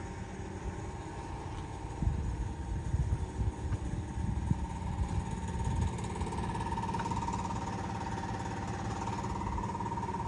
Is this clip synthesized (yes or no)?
no